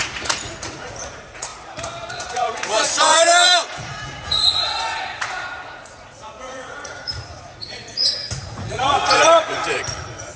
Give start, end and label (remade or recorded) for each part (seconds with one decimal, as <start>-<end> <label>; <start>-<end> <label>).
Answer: 0.0-1.5 remade; 1.5-2.1 recorded; 2.1-10.4 remade